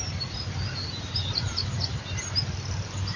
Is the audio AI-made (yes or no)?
no